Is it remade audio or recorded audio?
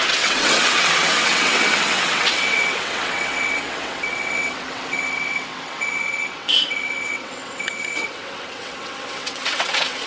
remade